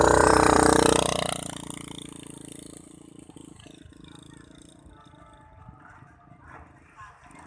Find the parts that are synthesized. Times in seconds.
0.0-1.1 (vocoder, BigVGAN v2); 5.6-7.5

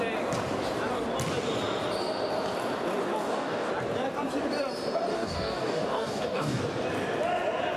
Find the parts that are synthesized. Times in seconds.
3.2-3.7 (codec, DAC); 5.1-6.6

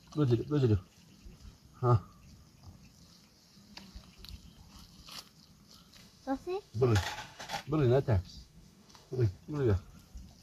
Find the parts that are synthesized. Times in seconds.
6.0-7.5 (autoencoder, DAC-VAE); 8.4-9.4